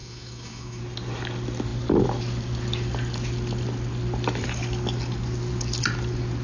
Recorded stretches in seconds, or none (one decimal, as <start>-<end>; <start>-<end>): 0.8-6.4